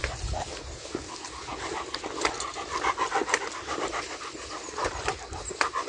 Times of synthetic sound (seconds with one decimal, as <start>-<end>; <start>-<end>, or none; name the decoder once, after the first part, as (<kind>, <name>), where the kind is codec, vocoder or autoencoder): none

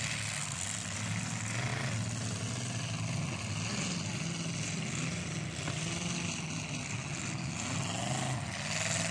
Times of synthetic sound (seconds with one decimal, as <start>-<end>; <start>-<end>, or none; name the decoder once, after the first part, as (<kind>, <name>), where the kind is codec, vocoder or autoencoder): none

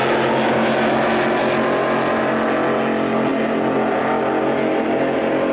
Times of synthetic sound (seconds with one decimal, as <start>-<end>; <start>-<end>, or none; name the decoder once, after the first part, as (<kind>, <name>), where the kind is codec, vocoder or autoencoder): none

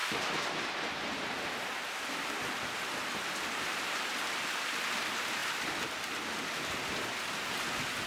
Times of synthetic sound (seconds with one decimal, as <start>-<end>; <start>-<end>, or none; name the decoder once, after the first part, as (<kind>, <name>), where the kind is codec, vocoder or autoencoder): 5.4-6.8 (vocoder, BigVGAN v2)

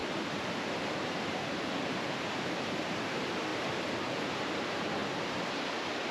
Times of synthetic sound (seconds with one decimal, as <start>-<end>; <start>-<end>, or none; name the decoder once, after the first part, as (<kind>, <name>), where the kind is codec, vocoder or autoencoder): 0.0-3.5 (vocoder, BigVGAN v2); 4.1-6.1